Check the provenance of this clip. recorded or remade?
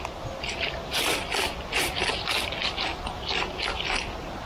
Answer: recorded